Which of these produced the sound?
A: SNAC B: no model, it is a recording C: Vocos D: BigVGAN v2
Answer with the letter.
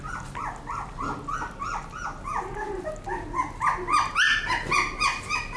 B